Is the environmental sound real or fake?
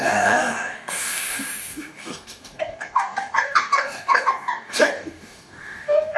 fake